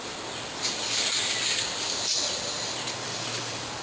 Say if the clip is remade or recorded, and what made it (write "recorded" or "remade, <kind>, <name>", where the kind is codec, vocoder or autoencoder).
recorded